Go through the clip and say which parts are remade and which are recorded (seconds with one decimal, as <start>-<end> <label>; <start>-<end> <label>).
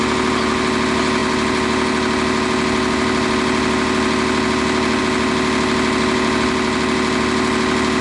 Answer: 0.0-8.0 recorded